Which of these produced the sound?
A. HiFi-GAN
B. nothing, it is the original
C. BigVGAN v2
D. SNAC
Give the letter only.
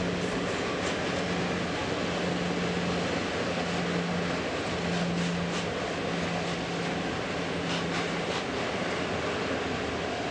B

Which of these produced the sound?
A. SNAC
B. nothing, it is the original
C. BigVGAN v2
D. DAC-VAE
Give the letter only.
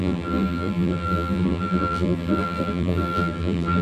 C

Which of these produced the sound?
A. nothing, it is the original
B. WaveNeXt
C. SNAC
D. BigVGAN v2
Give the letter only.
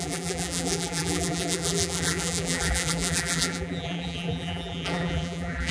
D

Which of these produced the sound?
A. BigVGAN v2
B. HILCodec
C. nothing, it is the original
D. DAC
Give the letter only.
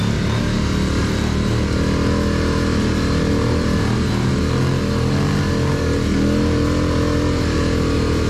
C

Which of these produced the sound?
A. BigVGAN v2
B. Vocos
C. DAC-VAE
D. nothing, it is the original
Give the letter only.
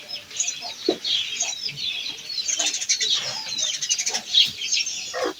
A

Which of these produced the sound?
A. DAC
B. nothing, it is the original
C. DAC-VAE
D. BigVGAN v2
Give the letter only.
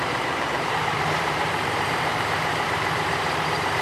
D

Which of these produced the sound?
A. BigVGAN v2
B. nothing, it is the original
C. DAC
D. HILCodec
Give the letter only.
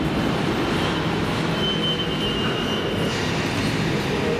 B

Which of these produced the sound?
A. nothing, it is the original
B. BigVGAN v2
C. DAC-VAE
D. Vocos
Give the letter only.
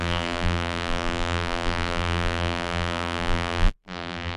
B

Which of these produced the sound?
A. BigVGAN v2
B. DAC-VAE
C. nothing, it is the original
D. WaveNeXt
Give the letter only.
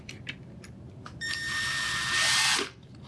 A